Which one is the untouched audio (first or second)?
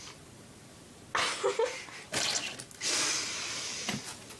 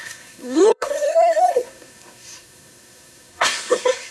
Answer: first